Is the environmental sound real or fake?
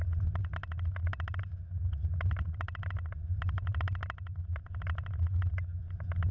real